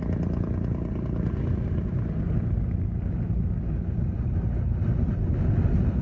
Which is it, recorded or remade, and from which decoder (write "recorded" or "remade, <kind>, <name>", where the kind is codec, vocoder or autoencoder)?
recorded